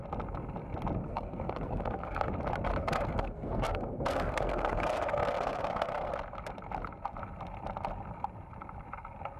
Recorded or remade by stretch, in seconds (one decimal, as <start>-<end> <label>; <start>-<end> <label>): 0.0-1.0 recorded; 1.0-2.3 remade; 2.3-2.8 recorded; 2.8-6.1 remade; 6.1-9.4 recorded